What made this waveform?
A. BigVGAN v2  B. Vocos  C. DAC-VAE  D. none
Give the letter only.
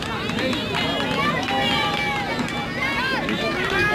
D